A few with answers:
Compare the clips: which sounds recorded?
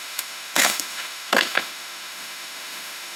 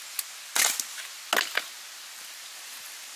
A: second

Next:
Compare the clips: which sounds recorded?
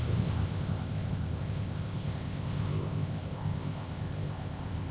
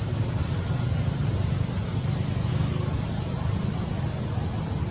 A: second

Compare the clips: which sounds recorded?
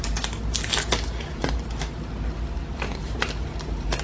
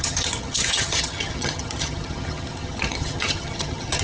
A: first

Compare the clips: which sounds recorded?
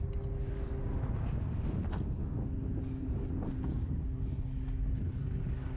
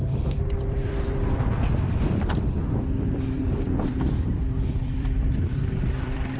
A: first